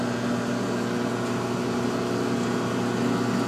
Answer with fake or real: real